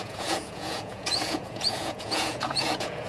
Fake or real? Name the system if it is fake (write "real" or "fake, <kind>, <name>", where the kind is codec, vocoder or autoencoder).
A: fake, vocoder, Vocos